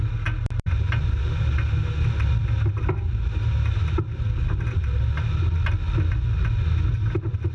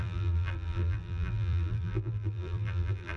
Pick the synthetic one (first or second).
second